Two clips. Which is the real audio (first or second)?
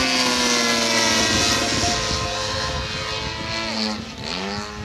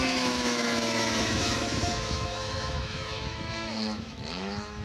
first